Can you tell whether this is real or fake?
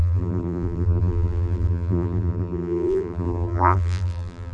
fake